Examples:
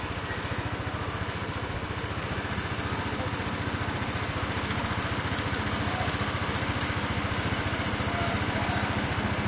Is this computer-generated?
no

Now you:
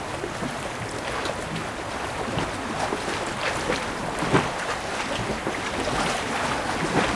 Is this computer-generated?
no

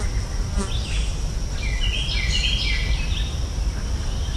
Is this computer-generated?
no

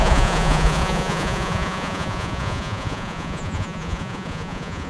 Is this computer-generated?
yes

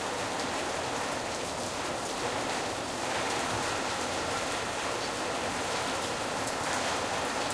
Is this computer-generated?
no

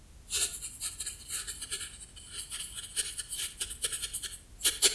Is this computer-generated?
no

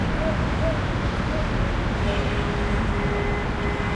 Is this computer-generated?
no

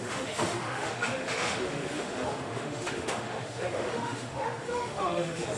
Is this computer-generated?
yes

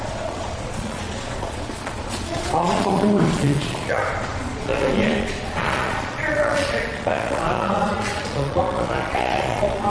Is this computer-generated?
yes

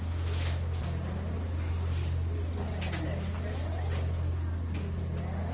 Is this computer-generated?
no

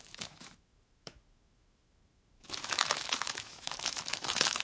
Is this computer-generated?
yes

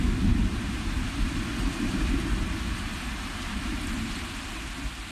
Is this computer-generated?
no